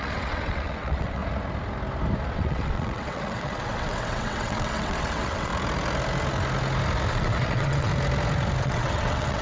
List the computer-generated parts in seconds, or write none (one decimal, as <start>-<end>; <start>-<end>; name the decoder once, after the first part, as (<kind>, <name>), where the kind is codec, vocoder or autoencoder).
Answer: 0.0-1.2 (vocoder, WaveNeXt); 2.3-5.5; 7.1-7.9; 8.6-9.4